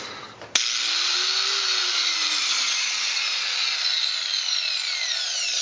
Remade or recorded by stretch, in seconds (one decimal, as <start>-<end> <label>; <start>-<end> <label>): 0.0-2.4 recorded; 2.4-3.2 remade; 3.2-5.6 recorded